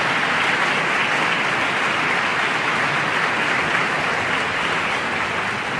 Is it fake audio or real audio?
real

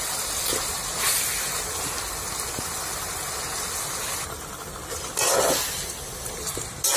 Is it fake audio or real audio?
real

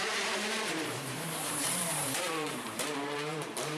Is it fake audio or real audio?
fake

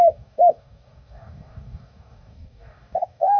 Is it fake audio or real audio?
fake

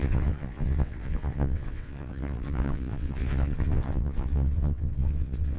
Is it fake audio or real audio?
fake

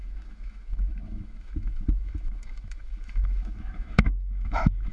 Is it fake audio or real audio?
fake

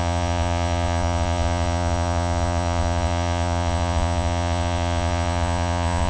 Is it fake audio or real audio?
fake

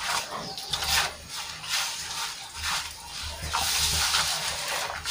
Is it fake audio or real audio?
fake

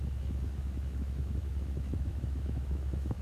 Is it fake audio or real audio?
fake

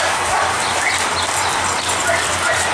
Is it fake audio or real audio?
real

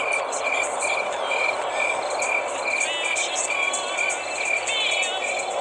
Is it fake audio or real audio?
real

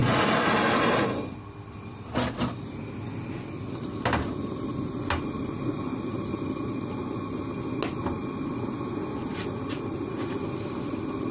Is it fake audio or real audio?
real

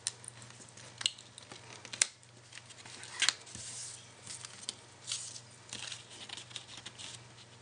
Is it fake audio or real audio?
real